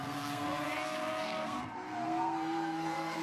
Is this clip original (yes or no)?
no